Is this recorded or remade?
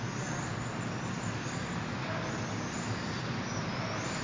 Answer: recorded